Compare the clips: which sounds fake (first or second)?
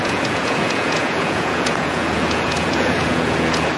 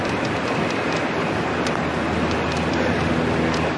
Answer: first